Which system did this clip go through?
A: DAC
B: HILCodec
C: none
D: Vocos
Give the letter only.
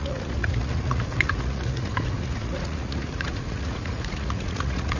D